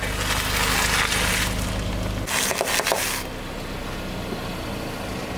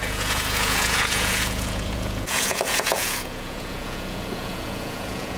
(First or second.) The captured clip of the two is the first